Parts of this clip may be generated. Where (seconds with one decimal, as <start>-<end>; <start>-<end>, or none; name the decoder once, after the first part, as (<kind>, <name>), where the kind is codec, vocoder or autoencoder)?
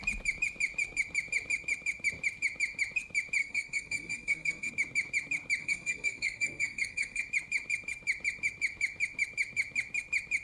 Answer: 3.4-4.7 (codec, SNAC); 5.6-7.2